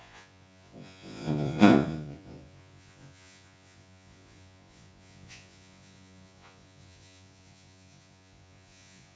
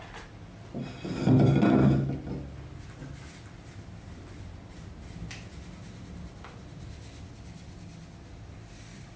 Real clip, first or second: second